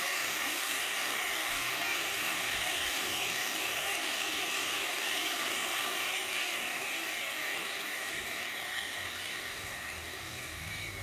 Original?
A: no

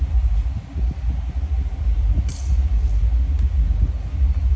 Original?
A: yes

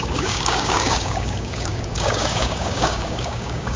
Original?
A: no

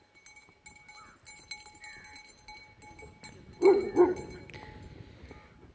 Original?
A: yes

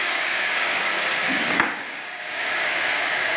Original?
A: no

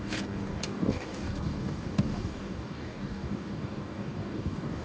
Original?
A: no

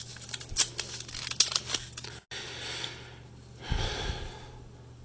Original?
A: yes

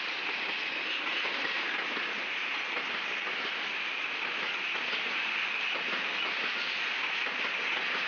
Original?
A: yes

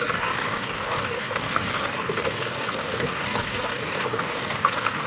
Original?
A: no